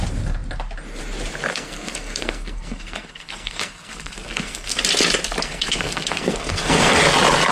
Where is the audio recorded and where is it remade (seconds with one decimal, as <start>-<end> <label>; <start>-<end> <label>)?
0.0-1.5 recorded; 1.5-4.8 remade; 4.8-5.4 recorded; 5.4-7.0 remade; 7.0-7.5 recorded

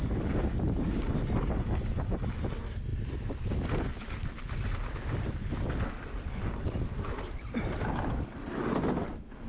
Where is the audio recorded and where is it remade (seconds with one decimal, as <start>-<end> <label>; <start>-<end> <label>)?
0.0-9.5 recorded

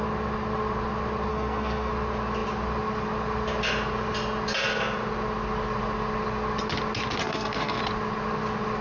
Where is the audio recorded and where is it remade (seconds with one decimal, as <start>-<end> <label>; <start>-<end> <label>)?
0.0-1.3 recorded; 1.3-1.9 remade; 1.9-7.2 recorded; 7.2-7.8 remade; 7.8-8.8 recorded

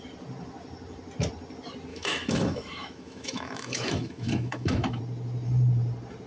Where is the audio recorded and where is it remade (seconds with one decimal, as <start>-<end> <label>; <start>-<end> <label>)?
0.0-1.9 recorded; 1.9-5.0 remade; 5.0-6.3 recorded